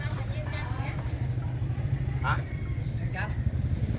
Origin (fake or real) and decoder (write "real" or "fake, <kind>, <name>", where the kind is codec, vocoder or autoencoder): fake, vocoder, BigVGAN v2